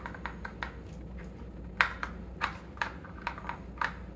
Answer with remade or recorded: recorded